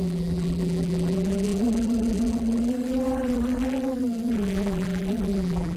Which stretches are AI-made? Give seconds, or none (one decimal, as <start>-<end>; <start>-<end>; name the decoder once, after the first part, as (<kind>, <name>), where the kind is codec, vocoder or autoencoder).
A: 0.0-5.8 (vocoder, BigVGAN v2)